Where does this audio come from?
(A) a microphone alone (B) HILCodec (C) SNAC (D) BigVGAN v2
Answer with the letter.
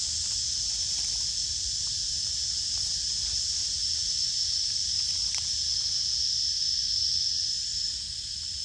A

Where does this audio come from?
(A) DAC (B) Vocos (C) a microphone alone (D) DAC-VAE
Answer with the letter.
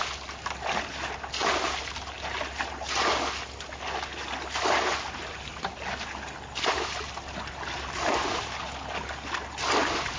C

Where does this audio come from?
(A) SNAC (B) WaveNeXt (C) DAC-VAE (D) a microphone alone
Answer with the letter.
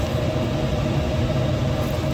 D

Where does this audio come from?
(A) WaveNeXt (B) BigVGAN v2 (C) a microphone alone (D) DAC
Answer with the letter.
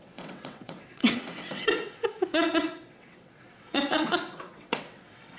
A